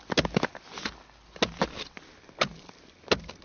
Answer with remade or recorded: recorded